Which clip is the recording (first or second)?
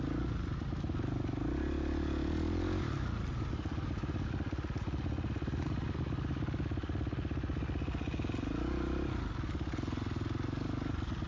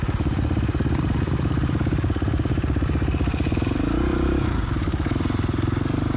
first